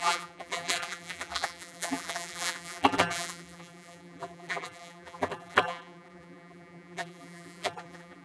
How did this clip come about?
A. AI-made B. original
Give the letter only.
A